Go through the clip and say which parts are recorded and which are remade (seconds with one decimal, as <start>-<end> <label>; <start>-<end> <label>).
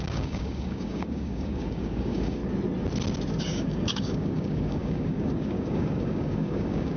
0.0-2.4 remade; 2.4-3.4 recorded; 3.4-7.0 remade